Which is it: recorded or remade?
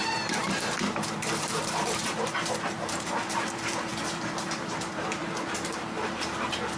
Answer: remade